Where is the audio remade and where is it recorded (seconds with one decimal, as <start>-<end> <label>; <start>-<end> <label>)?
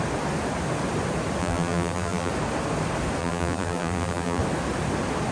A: 0.0-1.4 recorded; 1.4-2.3 remade; 2.3-3.2 recorded; 3.2-4.4 remade; 4.4-5.3 recorded